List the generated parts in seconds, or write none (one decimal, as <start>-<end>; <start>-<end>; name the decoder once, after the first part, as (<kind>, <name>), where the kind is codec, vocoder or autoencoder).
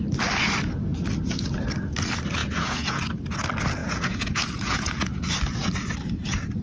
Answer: 2.4-3.0 (vocoder, Vocos); 3.8-5.2